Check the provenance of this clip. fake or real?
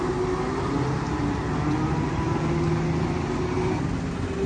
real